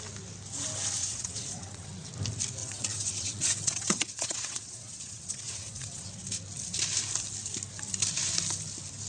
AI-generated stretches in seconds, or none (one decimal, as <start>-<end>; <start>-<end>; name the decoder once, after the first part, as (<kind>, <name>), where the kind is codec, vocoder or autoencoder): 1.0-2.1 (vocoder, WaveNeXt); 2.6-6.1